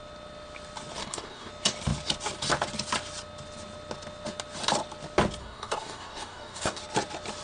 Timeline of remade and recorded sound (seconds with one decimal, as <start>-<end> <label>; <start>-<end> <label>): 0.0-1.0 recorded; 1.0-1.5 remade; 1.5-5.4 recorded; 5.4-6.8 remade; 6.8-7.4 recorded